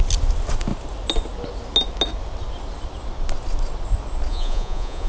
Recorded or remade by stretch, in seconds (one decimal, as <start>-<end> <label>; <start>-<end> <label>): 0.0-4.3 recorded; 4.3-5.1 remade